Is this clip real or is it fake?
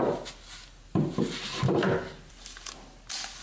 real